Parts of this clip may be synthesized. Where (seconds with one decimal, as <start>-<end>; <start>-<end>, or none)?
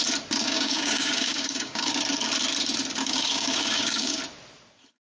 0.4-1.9; 3.0-4.2